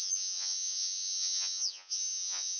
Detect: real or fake fake